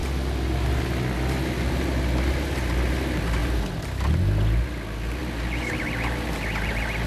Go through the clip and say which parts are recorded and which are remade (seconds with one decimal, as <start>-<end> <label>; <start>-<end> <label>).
0.0-7.1 recorded